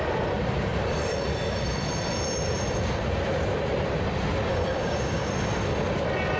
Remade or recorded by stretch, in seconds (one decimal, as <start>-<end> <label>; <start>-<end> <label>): 0.0-4.5 recorded; 4.5-5.3 remade; 5.3-6.4 recorded